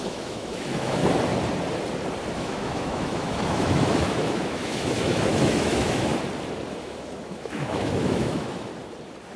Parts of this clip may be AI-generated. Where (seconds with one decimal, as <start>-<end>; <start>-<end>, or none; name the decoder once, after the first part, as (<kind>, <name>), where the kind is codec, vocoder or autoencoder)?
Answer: 0.0-1.0 (autoencoder, DAC-VAE); 2.3-6.1; 6.7-8.7